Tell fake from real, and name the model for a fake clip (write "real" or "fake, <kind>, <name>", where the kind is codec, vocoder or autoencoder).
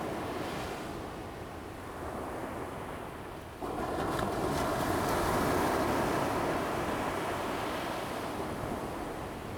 real